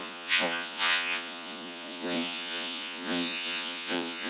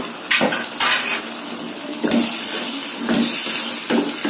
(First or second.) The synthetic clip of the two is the first